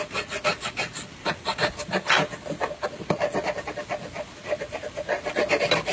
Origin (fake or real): real